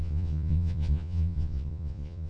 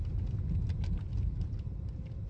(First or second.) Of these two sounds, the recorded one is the second